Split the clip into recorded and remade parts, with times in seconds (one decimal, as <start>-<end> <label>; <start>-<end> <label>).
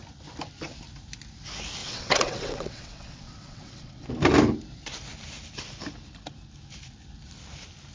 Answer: 0.0-1.8 recorded; 1.8-4.1 remade; 4.1-7.9 recorded